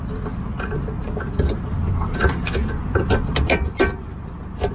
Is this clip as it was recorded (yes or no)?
yes